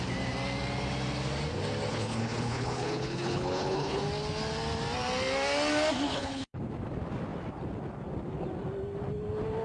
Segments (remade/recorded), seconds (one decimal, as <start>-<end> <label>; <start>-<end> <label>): 0.0-1.9 recorded; 1.9-4.0 remade; 4.0-6.1 recorded; 6.1-6.6 remade; 6.6-9.6 recorded